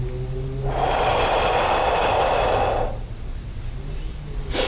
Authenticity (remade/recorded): recorded